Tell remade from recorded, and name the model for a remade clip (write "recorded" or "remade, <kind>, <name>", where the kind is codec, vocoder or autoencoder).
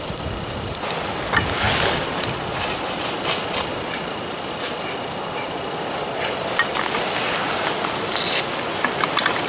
recorded